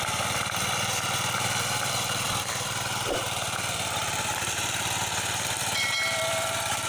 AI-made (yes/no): yes